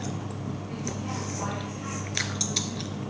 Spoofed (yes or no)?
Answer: no